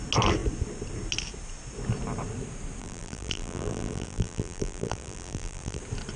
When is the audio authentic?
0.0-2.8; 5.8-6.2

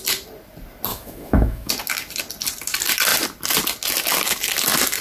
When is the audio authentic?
0.0-0.9; 1.7-5.0

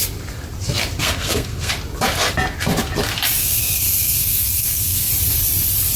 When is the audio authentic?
0.0-1.0; 1.7-3.4; 5.1-6.0

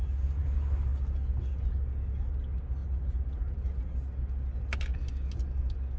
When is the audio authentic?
0.0-6.0

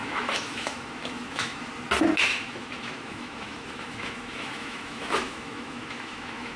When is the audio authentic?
1.7-2.3

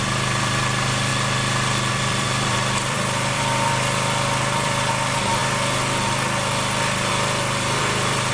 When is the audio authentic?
1.1-1.9; 5.4-7.1

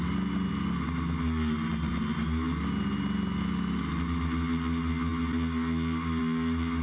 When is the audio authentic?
0.0-6.8

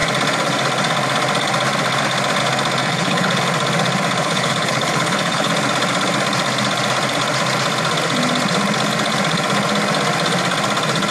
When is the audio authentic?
0.0-2.8; 3.4-4.2; 5.5-11.1